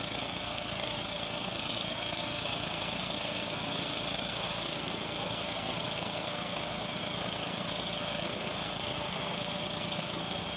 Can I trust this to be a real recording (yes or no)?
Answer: no